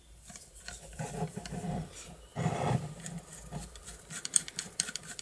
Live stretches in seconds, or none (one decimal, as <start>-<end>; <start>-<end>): 2.3-3.8